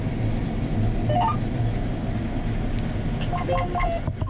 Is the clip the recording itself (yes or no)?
yes